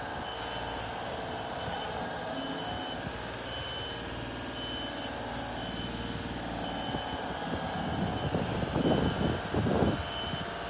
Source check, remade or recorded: recorded